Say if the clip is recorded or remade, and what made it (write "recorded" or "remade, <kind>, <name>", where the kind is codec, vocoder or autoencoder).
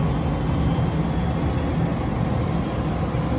recorded